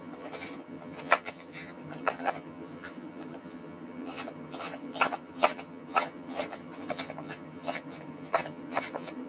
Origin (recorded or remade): remade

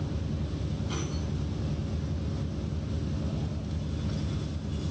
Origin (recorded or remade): recorded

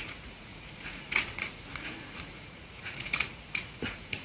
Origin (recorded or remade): remade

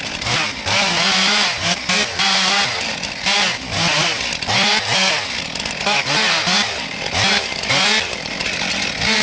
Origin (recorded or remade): recorded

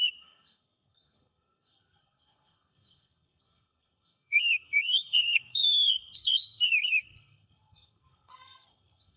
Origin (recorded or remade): remade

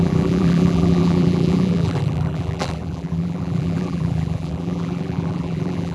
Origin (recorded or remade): remade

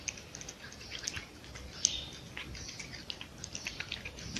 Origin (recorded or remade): recorded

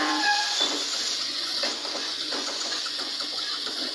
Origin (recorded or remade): remade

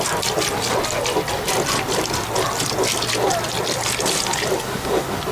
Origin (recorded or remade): recorded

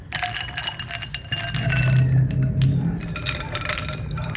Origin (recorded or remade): recorded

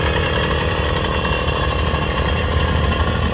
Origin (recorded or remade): recorded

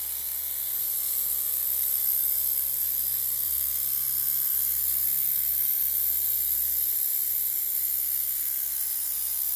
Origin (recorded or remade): recorded